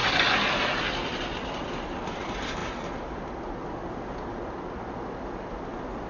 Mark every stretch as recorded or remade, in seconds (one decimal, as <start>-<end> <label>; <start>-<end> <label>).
0.0-6.1 recorded